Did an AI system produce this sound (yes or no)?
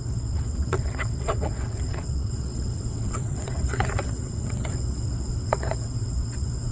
yes